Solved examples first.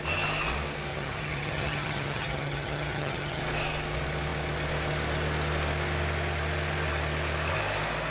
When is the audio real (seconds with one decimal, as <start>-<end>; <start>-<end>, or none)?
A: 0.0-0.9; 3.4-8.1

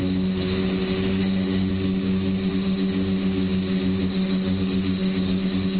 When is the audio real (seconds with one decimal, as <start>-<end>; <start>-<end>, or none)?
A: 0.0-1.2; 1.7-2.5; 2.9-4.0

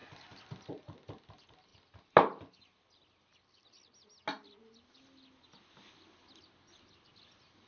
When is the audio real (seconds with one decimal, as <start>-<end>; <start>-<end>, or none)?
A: 0.0-7.7

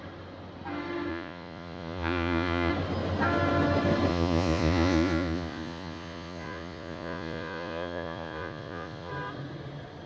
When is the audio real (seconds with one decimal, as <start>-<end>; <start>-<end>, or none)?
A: 0.0-1.1; 2.7-4.1; 9.1-10.1

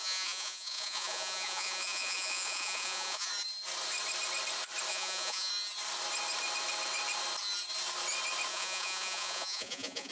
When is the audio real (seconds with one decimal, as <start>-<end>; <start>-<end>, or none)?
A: 3.3-4.9; 5.5-8.5

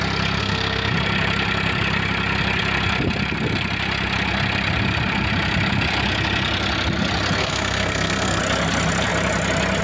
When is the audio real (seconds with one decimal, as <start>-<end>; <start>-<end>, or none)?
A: 0.0-0.4; 0.9-7.4; 8.4-9.8

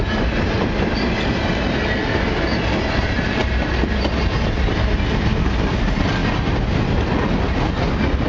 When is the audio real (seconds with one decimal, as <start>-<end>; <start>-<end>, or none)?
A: 0.0-8.3

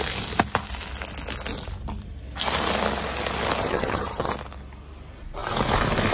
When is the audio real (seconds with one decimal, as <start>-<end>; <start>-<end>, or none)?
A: 0.0-3.6; 4.3-6.1